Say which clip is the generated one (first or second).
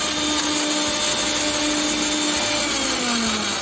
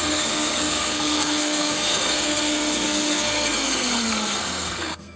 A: second